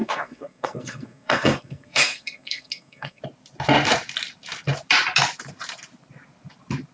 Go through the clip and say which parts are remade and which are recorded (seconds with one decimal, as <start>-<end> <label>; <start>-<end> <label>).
0.0-3.2 remade; 3.2-6.9 recorded